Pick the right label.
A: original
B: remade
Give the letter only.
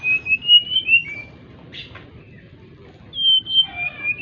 A